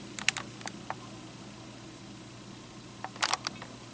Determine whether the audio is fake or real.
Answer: real